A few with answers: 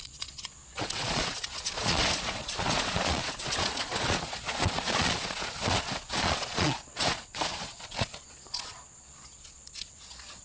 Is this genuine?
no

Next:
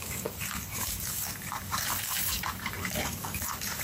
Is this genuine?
no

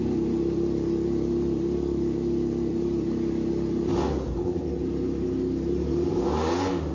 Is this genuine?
yes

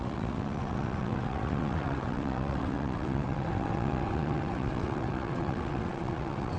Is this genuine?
no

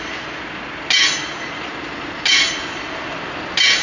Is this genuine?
yes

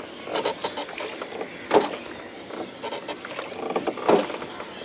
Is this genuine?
yes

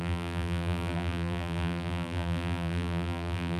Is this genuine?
no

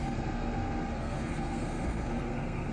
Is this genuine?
no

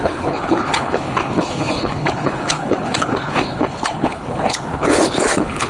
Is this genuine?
no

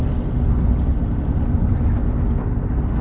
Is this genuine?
yes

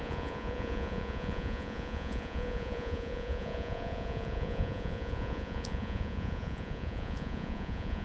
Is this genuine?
no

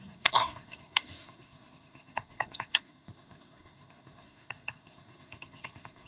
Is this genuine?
no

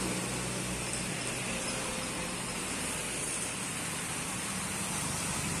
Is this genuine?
yes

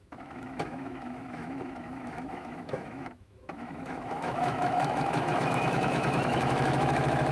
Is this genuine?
no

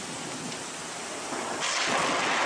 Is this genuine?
yes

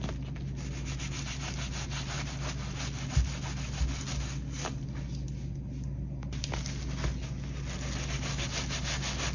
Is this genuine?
yes